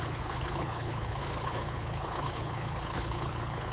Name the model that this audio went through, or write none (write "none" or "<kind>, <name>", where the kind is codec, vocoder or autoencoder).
codec, HILCodec